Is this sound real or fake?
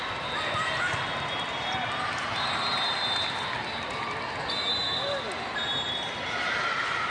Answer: real